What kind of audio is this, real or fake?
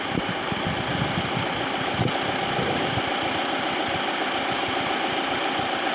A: fake